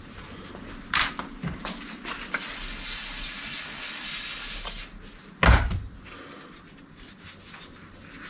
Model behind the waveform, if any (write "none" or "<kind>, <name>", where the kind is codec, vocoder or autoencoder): none